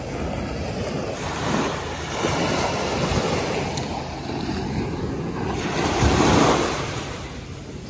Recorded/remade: recorded